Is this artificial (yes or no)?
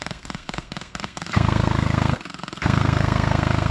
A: yes